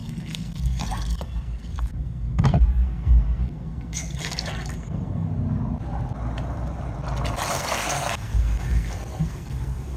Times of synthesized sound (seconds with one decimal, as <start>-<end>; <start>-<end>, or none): 0.0-5.3; 7.5-10.0